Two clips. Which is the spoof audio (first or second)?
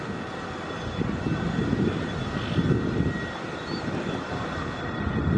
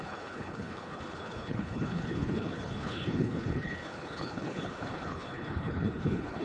second